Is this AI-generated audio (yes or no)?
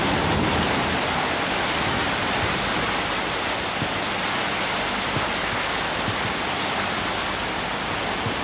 no